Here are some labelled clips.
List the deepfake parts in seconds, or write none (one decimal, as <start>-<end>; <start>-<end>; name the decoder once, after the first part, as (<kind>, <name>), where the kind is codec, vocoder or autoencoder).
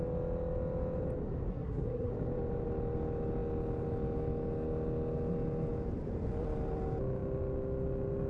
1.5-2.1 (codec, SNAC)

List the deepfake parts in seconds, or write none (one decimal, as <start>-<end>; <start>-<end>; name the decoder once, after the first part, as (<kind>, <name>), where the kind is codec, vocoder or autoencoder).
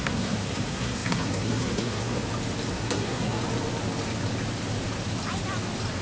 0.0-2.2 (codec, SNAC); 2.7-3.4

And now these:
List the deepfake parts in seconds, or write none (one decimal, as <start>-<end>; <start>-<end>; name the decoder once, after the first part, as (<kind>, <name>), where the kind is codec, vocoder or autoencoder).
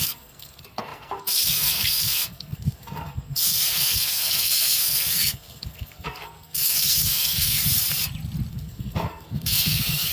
0.0-7.6 (codec, SNAC); 8.5-10.1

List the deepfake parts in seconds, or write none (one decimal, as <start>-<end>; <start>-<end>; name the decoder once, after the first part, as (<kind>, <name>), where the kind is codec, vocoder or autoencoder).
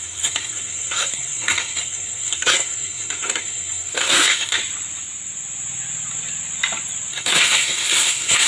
0.0-4.6 (codec, SNAC); 7.1-8.5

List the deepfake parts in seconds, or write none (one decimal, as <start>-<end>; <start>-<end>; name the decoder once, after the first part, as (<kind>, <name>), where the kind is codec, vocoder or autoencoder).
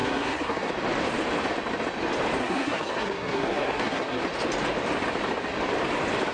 0.0-0.7 (codec, SNAC); 2.4-4.2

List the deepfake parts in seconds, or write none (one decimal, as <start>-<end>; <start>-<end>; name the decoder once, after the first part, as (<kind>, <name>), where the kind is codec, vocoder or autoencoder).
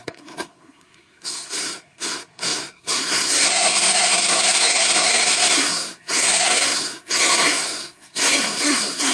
0.0-9.1 (codec, SNAC)